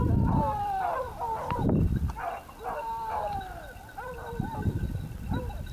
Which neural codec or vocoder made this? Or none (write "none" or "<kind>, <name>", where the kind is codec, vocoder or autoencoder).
vocoder, BigVGAN v2